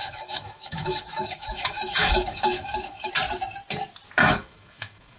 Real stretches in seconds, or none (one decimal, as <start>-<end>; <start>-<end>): 3.1-4.2

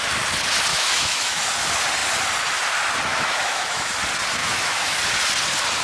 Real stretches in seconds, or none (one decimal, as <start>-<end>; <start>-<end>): 0.0-0.7; 1.4-3.1; 3.9-4.4; 5.0-5.8

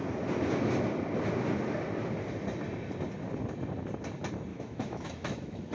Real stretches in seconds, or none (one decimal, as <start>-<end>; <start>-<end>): 0.0-4.5

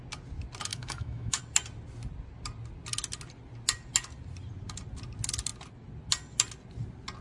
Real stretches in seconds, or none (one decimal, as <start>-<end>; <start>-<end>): 0.0-0.7; 1.4-7.2

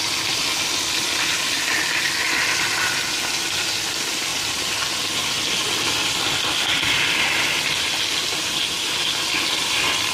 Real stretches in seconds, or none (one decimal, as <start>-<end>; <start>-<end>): 0.0-10.1

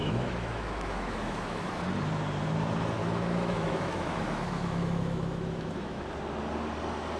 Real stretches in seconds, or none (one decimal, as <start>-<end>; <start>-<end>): 1.8-3.0; 6.0-7.2